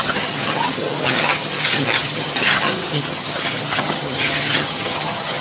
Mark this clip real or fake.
fake